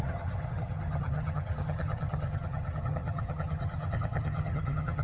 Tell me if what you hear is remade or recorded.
remade